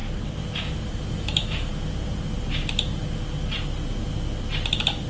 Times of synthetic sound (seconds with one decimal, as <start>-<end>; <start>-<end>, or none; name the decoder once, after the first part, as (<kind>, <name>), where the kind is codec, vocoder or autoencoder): 1.1-1.7 (autoencoder, DAC-VAE)